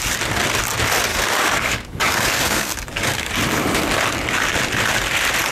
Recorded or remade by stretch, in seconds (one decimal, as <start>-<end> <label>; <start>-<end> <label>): 0.0-1.1 recorded; 1.1-3.3 remade; 3.3-5.5 recorded